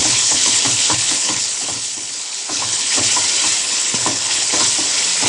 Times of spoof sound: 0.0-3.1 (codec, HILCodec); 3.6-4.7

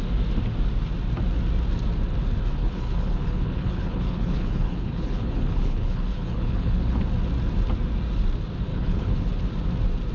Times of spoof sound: 2.6-7.0 (codec, HILCodec); 8.7-9.3

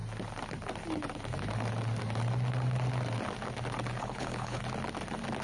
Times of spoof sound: 4.0-4.6 (codec, HILCodec)

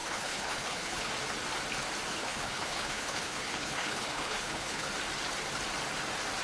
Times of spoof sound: 0.0-1.1 (codec, HILCodec); 2.1-4.9

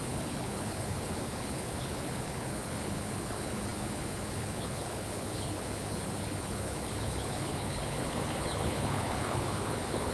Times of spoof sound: 0.0-10.1 (codec, HILCodec)

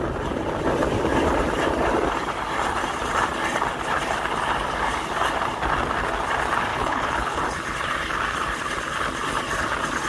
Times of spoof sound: 6.7-7.4 (codec, HILCodec)